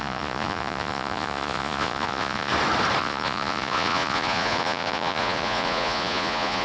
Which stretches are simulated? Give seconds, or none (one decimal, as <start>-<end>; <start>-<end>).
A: 0.0-2.5; 3.0-6.6